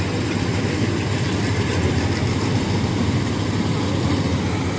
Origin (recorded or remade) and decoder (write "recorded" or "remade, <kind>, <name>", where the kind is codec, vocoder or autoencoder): recorded